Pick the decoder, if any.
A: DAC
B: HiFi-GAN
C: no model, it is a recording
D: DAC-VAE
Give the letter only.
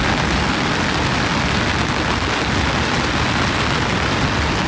C